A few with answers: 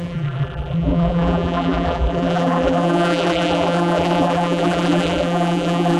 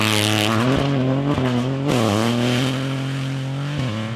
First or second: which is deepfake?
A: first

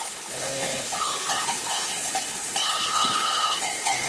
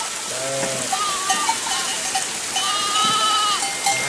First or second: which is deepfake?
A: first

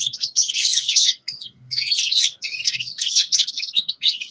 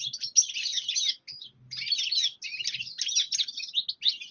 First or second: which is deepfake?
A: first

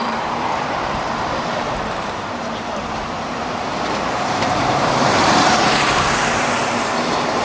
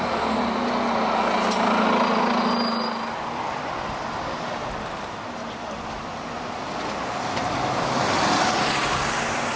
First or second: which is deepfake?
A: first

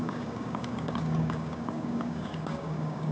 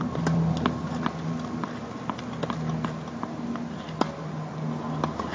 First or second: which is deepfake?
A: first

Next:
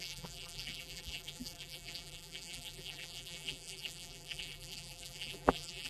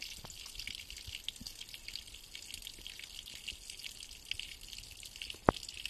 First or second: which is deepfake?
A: first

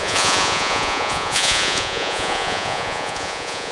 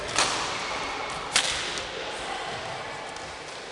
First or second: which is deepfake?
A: first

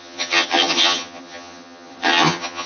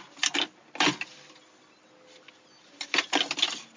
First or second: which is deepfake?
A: first